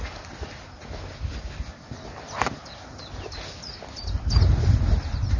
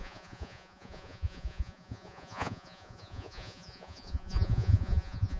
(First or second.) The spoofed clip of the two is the second